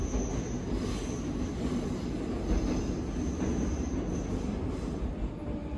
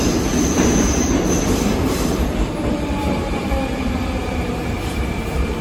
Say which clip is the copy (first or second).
second